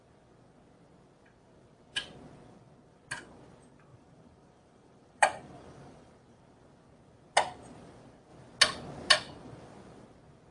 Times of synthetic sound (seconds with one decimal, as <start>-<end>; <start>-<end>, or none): 3.9-6.4